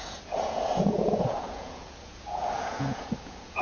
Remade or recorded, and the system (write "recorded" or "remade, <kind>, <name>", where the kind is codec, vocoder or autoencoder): remade, vocoder, Vocos